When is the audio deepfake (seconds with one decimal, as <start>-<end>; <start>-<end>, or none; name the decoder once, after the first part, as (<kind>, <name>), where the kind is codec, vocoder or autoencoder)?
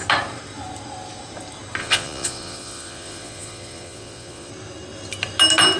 1.8-4.5 (vocoder, Vocos)